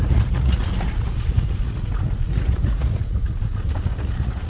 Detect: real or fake fake